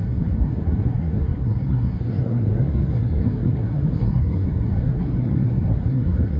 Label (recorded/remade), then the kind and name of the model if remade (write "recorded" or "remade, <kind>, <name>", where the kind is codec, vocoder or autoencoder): remade, codec, SNAC